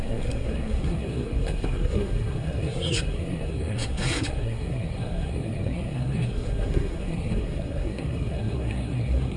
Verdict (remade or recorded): remade